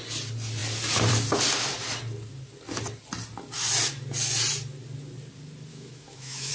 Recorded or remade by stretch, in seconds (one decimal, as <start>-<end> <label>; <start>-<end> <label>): 0.0-5.7 recorded; 5.7-6.5 remade